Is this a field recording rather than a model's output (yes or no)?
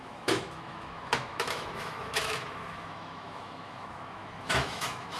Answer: no